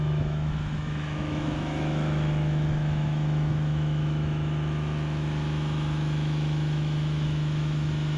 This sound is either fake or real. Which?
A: fake